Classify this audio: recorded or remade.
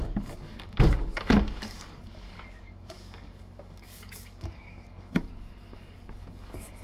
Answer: remade